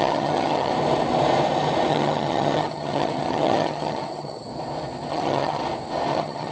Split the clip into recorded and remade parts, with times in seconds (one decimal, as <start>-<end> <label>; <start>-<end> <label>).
0.0-0.7 remade; 0.7-1.9 recorded; 1.9-4.5 remade; 4.5-5.1 recorded; 5.1-5.6 remade; 5.6-6.1 recorded; 6.1-6.5 remade